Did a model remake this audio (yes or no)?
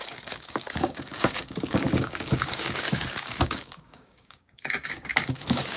yes